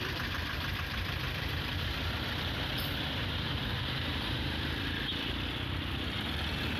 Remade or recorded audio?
remade